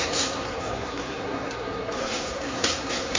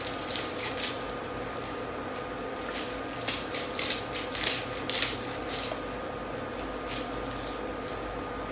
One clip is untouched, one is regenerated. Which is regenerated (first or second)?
first